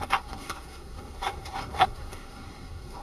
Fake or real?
fake